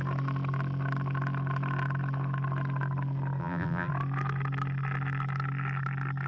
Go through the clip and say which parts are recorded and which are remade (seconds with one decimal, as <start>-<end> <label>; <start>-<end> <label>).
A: 0.0-3.4 recorded; 3.4-3.9 remade; 3.9-6.3 recorded